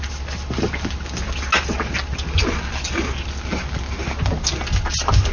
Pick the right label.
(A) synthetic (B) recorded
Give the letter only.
B